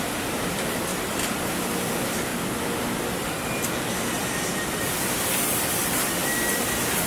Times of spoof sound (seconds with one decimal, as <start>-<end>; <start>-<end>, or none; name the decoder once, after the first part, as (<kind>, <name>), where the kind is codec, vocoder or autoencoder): 0.0-0.9 (vocoder, BigVGAN v2); 1.5-2.3; 3.0-7.1